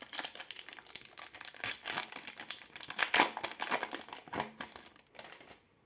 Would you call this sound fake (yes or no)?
no